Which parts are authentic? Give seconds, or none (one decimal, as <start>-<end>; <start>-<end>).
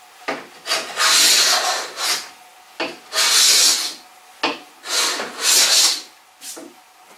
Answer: 0.0-7.2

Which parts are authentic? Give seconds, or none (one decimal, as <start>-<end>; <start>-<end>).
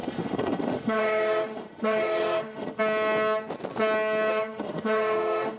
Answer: 2.8-4.3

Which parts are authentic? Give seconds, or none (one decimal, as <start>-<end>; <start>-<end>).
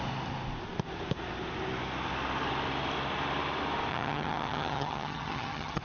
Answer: 0.0-3.9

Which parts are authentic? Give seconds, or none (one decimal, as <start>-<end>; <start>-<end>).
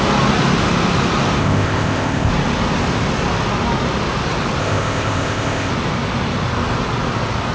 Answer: 0.0-1.4; 2.3-4.6; 5.7-7.5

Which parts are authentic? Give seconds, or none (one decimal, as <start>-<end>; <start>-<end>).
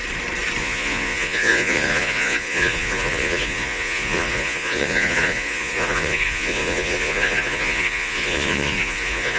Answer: 0.0-0.6